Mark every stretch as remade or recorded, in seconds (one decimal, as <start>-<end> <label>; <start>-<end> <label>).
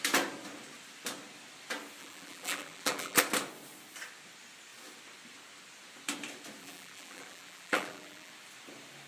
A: 0.0-2.0 recorded; 2.0-3.2 remade; 3.2-6.6 recorded; 6.6-8.3 remade; 8.3-9.1 recorded